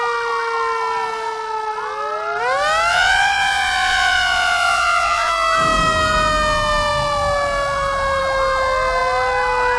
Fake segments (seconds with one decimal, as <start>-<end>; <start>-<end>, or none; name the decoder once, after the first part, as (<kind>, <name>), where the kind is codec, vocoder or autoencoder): 2.9-5.3 (vocoder, Vocos)